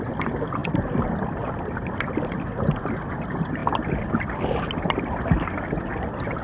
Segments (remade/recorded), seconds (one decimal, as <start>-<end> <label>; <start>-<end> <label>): 0.0-0.6 recorded; 0.6-2.3 remade; 2.3-3.6 recorded; 3.6-4.4 remade; 4.4-6.4 recorded